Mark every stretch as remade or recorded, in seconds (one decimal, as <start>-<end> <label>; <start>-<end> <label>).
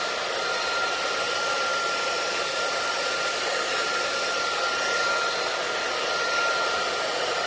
0.0-7.5 recorded